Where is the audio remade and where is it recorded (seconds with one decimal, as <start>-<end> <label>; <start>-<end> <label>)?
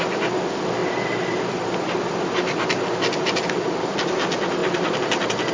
0.0-5.5 recorded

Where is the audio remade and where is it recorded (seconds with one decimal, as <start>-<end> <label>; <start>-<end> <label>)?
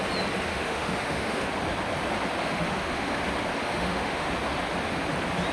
0.0-0.5 recorded; 0.5-1.5 remade; 1.5-2.4 recorded; 2.4-3.2 remade; 3.2-3.6 recorded; 3.6-4.3 remade; 4.3-5.5 recorded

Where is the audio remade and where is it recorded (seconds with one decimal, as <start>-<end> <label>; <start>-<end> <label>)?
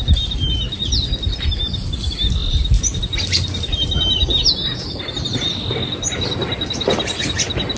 0.0-7.8 recorded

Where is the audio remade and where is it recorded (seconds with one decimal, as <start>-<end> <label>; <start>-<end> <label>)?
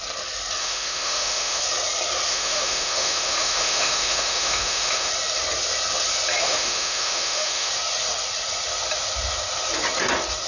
0.0-0.6 recorded; 0.6-1.6 remade; 1.6-2.3 recorded; 2.3-5.1 remade; 5.1-6.4 recorded; 6.4-7.7 remade; 7.7-10.5 recorded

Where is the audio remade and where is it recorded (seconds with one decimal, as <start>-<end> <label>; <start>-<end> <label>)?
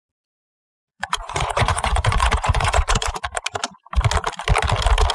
0.0-0.5 recorded; 0.5-3.1 remade; 3.1-5.1 recorded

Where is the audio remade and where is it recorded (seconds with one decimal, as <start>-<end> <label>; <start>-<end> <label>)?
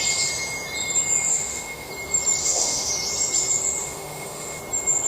0.0-1.3 recorded; 1.3-1.9 remade; 1.9-2.4 recorded; 2.4-2.9 remade; 2.9-3.8 recorded; 3.8-4.6 remade; 4.6-5.1 recorded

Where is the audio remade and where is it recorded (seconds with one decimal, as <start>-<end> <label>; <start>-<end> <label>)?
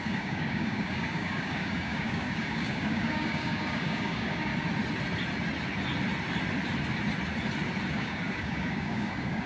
0.0-4.5 remade; 4.5-7.9 recorded; 7.9-9.5 remade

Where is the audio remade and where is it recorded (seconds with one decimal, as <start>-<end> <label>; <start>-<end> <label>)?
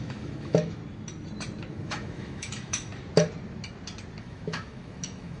0.0-0.8 remade; 0.8-1.7 recorded; 1.7-2.9 remade; 2.9-4.2 recorded; 4.2-5.4 remade